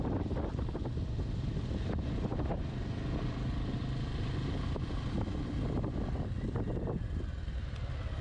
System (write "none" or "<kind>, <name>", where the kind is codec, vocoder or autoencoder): vocoder, BigVGAN v2